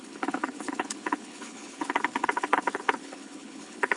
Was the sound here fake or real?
fake